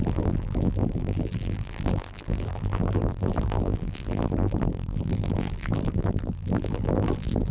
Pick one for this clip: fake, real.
fake